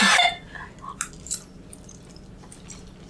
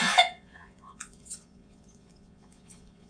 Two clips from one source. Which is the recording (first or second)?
first